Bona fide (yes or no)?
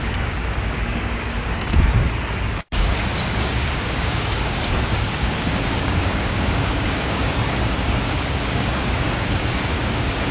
no